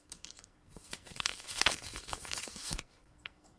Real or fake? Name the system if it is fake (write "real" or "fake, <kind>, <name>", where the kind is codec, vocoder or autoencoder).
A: fake, codec, SNAC